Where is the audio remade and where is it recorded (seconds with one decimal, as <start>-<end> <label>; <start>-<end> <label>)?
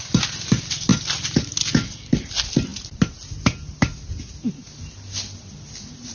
0.0-6.1 recorded